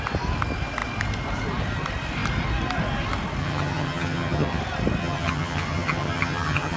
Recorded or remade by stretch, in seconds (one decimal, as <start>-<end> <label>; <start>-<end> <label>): 0.0-3.4 recorded; 3.4-4.6 remade; 4.6-5.0 recorded; 5.0-6.8 remade